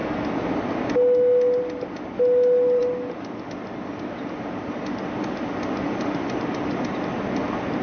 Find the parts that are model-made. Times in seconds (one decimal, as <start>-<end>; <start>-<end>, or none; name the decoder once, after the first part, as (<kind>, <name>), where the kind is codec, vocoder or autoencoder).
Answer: none